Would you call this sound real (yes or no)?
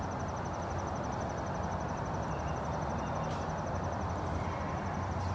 yes